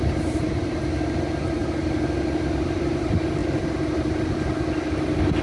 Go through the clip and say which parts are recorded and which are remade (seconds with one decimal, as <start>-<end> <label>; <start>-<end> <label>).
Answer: 0.0-1.6 remade; 1.6-2.9 recorded; 2.9-3.4 remade; 3.4-5.4 recorded